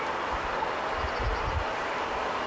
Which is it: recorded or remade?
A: recorded